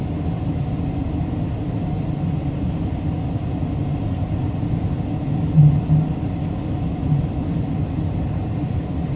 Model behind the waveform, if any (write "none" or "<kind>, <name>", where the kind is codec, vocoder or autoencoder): none